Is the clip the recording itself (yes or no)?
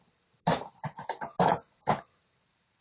yes